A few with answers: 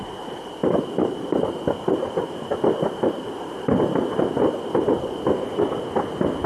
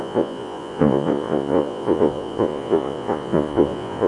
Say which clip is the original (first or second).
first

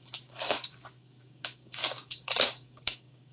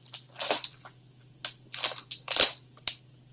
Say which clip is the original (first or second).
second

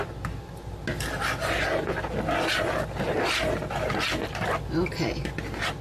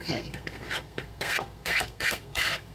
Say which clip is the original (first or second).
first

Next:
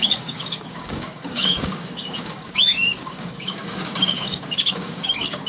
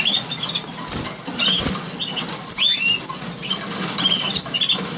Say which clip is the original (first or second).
second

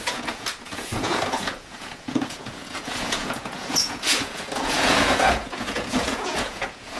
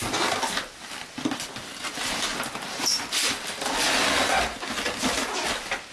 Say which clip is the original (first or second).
second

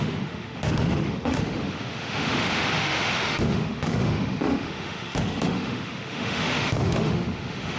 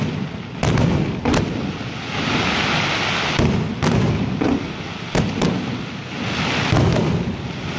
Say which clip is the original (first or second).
second